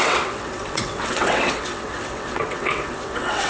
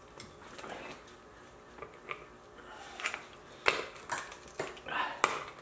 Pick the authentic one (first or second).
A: second